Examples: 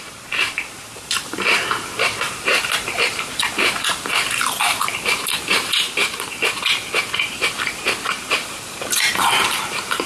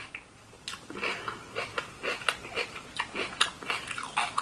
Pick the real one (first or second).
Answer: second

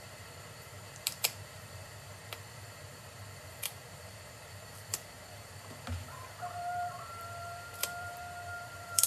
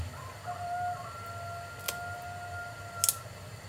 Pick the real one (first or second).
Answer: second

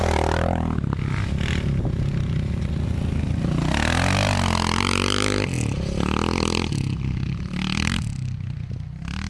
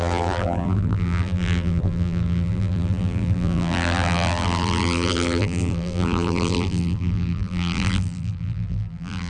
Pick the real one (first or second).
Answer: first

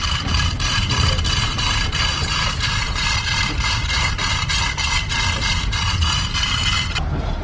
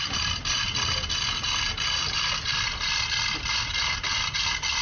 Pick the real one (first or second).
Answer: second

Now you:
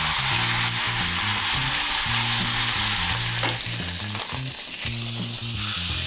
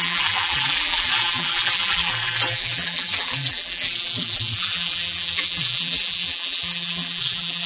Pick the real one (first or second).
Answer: first